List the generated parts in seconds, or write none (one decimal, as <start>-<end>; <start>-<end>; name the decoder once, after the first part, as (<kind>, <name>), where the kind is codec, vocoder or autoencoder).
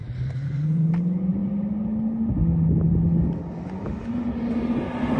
0.0-0.9 (vocoder, BigVGAN v2)